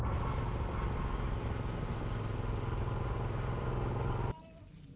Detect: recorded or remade recorded